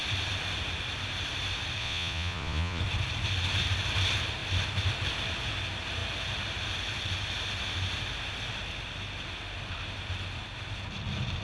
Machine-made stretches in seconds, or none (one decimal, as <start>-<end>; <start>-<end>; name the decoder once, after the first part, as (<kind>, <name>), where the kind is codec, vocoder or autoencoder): 1.8-2.8 (vocoder, Vocos)